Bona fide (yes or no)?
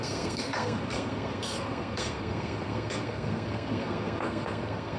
no